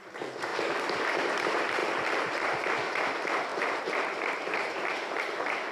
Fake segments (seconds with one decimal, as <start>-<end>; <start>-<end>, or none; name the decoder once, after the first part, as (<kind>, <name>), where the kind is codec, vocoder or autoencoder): 0.0-0.5 (vocoder, BigVGAN v2); 1.0-5.7